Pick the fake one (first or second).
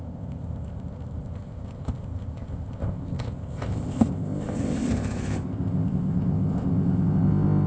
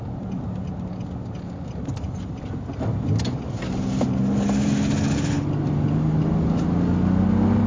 first